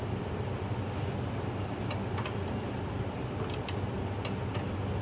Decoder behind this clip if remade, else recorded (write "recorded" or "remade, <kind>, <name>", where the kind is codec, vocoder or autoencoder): recorded